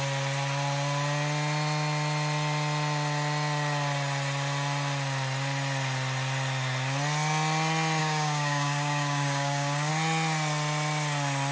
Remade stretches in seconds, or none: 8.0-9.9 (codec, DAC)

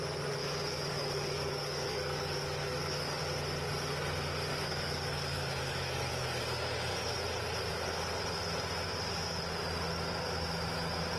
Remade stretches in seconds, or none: 0.4-3.2 (codec, DAC); 4.5-6.4